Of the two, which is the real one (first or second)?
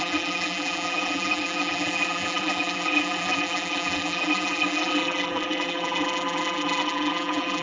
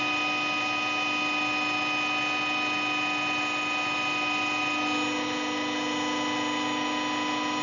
second